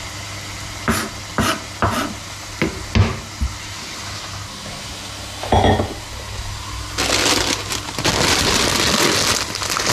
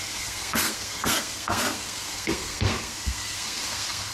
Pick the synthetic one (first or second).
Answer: second